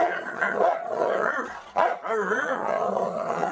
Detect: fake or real fake